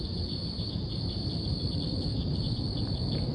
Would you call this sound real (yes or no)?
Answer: no